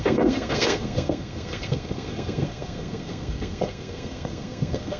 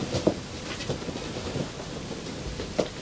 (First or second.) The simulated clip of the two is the first